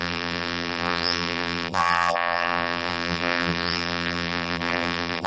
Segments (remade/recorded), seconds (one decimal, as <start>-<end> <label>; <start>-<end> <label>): 0.0-5.3 remade